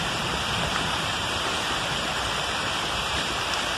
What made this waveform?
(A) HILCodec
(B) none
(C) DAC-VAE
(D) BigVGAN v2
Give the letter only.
D